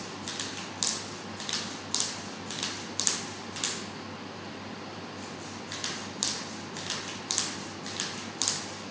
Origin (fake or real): real